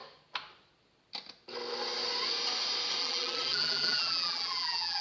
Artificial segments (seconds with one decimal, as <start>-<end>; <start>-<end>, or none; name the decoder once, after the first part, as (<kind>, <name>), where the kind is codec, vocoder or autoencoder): 3.0-5.0 (vocoder, BigVGAN v2)